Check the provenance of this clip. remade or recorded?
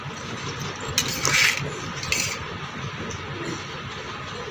recorded